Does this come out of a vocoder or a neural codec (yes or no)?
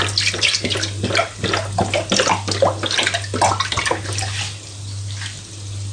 no